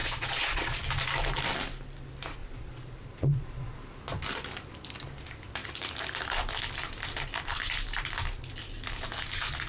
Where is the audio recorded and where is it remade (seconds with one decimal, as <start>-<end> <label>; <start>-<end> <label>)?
0.0-0.8 remade; 0.8-2.4 recorded; 2.4-3.8 remade; 3.8-9.7 recorded